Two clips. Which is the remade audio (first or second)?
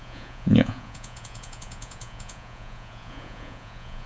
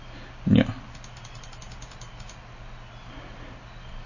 first